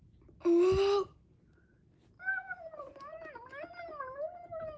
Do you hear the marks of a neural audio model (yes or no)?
no